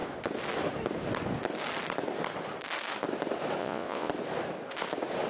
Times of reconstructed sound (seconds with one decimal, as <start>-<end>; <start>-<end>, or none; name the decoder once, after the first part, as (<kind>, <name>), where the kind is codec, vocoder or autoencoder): 3.6-4.1 (vocoder, Vocos)